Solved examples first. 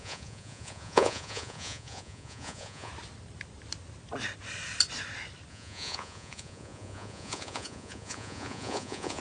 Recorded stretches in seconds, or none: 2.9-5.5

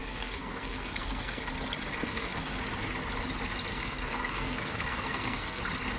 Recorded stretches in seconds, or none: 1.4-2.0; 2.6-3.7; 5.6-6.0

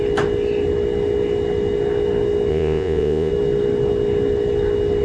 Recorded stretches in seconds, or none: 0.0-2.5; 3.3-5.0

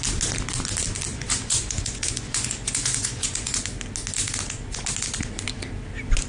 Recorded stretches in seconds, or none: 0.0-1.1; 3.6-6.3

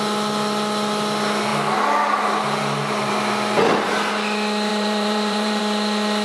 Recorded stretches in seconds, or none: 0.0-4.7; 5.6-6.2

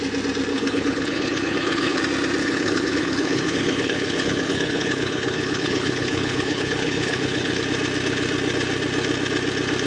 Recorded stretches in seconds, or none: 0.0-0.5; 2.0-2.4; 7.6-9.9